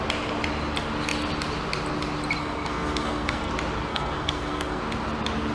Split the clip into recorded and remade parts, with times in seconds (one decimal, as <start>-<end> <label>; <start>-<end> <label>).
0.0-2.4 recorded; 2.4-3.5 remade; 3.5-3.9 recorded; 3.9-4.8 remade; 4.8-5.5 recorded